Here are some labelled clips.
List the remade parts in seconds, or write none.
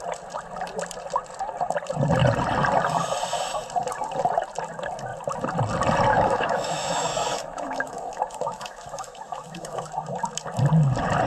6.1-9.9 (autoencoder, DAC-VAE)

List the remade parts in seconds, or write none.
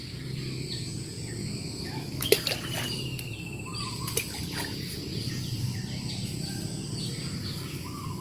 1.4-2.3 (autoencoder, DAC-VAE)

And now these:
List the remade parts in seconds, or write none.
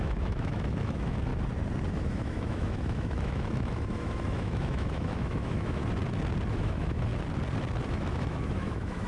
0.0-1.3 (autoencoder, DAC-VAE); 1.9-5.8; 6.5-7.1; 7.9-9.1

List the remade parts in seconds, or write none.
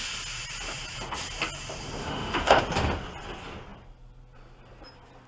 2.0-2.6 (autoencoder, DAC-VAE)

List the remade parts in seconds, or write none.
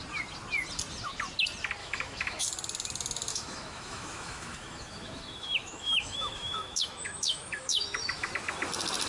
1.8-2.4 (autoencoder, DAC-VAE); 3.3-8.3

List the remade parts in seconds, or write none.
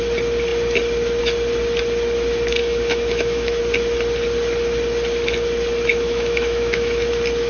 2.6-3.6 (autoencoder, DAC-VAE); 5.9-7.1